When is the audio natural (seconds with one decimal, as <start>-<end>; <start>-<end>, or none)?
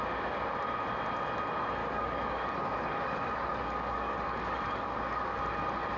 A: 0.0-1.8; 5.4-6.0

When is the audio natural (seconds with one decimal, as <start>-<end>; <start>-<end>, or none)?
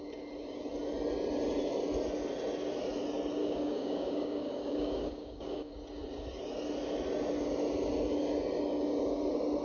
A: 0.0-3.4; 5.7-9.6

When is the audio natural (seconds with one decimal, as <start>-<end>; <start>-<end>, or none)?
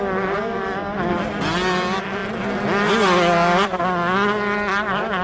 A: 0.0-5.2